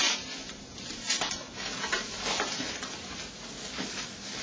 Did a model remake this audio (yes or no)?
no